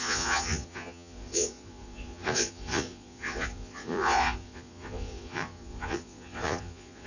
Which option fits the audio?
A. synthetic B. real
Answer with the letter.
A